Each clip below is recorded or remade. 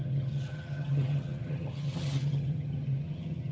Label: remade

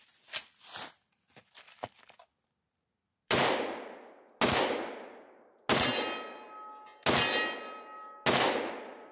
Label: recorded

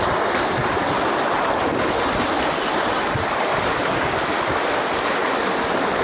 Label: recorded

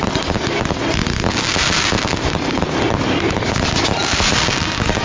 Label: recorded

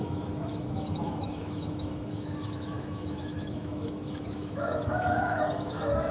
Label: remade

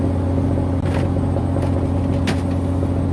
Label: recorded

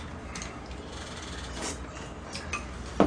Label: recorded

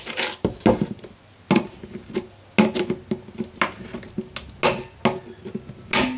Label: recorded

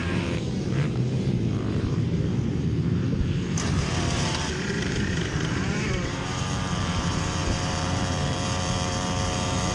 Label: remade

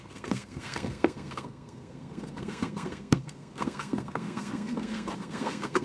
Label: remade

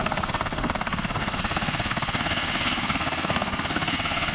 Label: remade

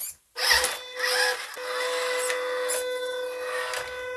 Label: recorded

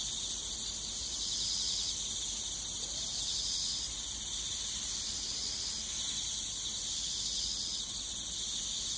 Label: recorded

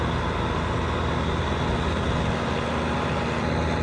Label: recorded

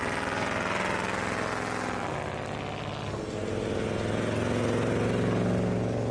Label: recorded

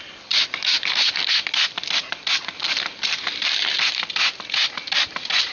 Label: recorded